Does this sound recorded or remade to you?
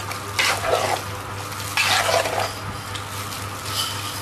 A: recorded